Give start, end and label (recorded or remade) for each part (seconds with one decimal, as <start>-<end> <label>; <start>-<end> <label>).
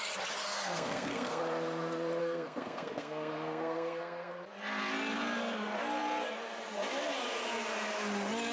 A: 0.0-0.4 recorded; 0.4-1.4 remade; 1.4-2.2 recorded; 2.2-4.3 remade; 4.3-8.5 recorded